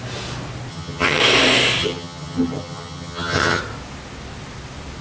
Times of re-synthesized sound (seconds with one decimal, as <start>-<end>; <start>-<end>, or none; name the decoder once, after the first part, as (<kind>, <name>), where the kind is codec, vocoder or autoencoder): 0.7-1.2 (vocoder, HiFi-GAN); 1.8-3.6